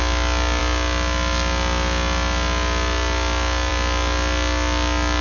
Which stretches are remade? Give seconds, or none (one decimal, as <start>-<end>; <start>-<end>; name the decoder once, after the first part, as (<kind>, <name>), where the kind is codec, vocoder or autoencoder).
none